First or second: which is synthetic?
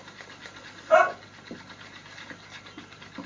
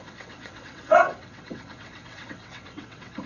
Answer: second